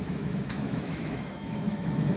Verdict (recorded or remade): remade